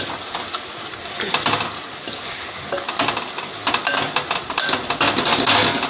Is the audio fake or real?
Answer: real